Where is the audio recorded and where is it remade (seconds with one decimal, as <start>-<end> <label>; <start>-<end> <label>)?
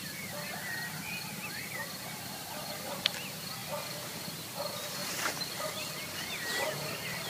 0.0-5.0 recorded; 5.0-5.6 remade; 5.6-7.3 recorded